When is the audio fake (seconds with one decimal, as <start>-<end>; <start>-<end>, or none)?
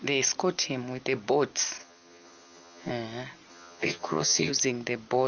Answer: 1.8-2.9; 3.5-4.5